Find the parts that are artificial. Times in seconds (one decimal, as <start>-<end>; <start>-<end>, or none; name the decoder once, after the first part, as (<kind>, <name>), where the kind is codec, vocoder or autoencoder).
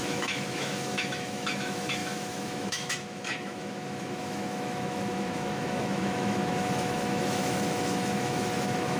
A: 0.0-9.0 (autoencoder, DAC-VAE)